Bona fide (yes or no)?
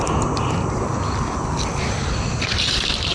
yes